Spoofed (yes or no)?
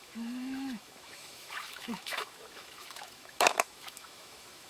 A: yes